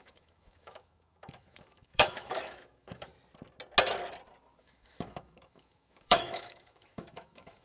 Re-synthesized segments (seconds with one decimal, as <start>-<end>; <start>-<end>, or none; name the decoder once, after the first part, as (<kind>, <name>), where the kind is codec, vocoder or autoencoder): 0.0-3.1 (autoencoder, DAC-VAE); 4.6-7.6

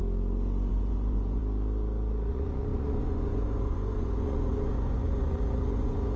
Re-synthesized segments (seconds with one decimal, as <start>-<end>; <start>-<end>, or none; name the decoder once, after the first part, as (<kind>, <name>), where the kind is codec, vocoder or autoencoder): 0.7-1.4 (vocoder, Vocos); 2.3-6.2